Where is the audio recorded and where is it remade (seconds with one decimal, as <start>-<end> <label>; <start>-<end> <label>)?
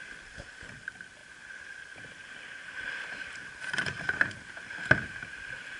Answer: 0.0-5.8 recorded